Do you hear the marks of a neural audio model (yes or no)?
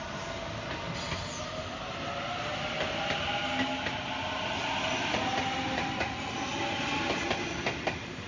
no